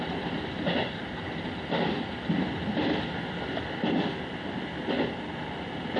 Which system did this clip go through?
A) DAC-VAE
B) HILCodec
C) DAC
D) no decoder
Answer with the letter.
D